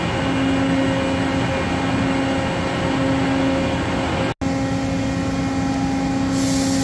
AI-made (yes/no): no